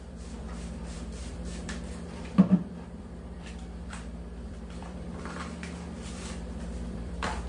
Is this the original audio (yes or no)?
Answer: no